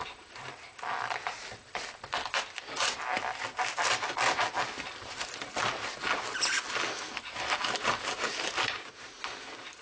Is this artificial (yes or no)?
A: no